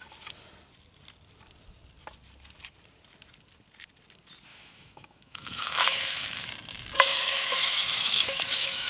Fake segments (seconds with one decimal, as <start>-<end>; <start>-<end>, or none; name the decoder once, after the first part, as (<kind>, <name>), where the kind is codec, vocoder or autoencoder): 4.5-6.5 (autoencoder, DAC-VAE); 7.1-8.9